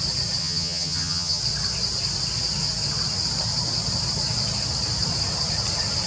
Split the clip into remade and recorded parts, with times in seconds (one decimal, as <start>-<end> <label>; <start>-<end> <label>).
0.0-0.4 recorded; 0.4-1.4 remade; 1.4-6.1 recorded